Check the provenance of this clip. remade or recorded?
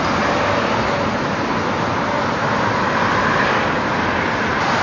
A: recorded